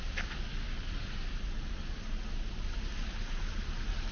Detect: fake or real real